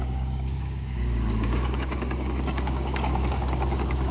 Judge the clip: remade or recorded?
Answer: remade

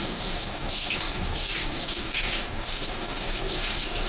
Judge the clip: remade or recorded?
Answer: remade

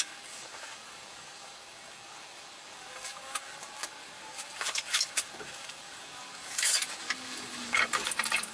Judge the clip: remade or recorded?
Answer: remade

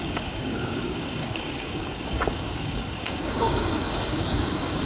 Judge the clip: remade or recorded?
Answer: remade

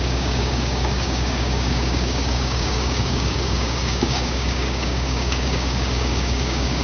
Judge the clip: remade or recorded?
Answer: remade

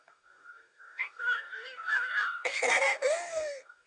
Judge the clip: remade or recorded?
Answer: remade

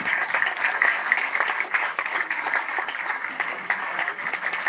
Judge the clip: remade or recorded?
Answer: remade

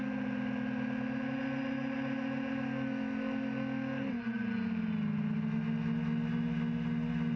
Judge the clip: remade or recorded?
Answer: recorded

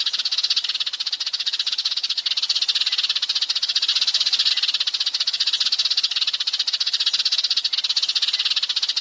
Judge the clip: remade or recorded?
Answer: recorded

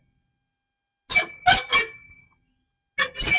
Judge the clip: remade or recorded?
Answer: recorded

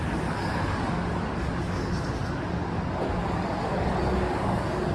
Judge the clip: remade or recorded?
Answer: remade